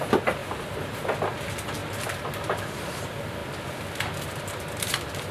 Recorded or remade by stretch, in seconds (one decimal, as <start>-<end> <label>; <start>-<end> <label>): 0.0-0.4 recorded; 0.4-1.0 remade; 1.0-1.8 recorded; 1.8-3.0 remade; 3.0-5.3 recorded